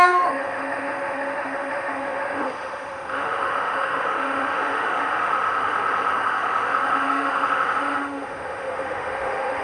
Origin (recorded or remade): remade